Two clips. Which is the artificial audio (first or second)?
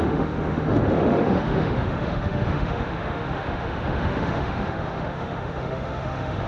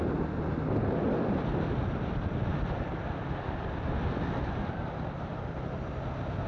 first